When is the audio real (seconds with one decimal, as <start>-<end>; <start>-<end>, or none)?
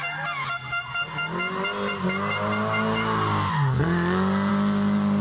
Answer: 0.0-5.2